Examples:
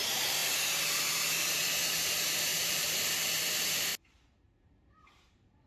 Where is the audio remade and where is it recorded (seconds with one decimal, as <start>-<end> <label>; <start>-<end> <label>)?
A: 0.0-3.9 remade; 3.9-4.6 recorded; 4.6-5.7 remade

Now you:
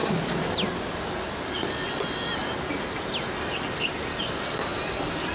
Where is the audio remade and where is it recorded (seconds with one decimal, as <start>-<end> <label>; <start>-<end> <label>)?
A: 0.0-5.3 recorded

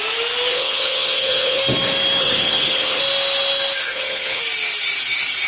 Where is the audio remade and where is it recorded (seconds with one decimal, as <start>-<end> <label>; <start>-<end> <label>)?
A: 0.0-0.5 recorded; 0.5-1.6 remade; 1.6-2.2 recorded; 2.2-3.0 remade; 3.0-3.8 recorded; 3.8-4.4 remade; 4.4-5.5 recorded

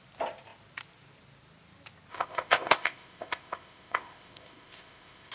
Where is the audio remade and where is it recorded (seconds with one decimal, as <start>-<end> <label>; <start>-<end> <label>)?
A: 0.0-2.1 recorded; 2.1-5.3 remade

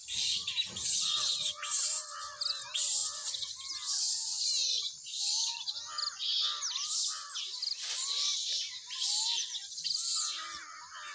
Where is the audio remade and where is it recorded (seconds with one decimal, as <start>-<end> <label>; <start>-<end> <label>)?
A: 0.0-1.2 remade; 1.2-6.8 recorded; 6.8-7.5 remade; 7.5-11.1 recorded

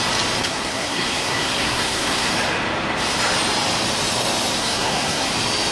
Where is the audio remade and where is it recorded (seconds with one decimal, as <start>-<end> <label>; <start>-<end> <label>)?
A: 0.0-0.4 recorded; 0.4-2.3 remade; 2.3-4.6 recorded; 4.6-5.3 remade; 5.3-5.7 recorded

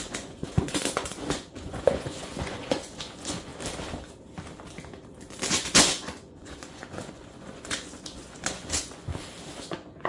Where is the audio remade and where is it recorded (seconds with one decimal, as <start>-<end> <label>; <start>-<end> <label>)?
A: 0.0-3.5 remade; 3.5-5.5 recorded; 5.5-9.1 remade; 9.1-9.6 recorded; 9.6-10.1 remade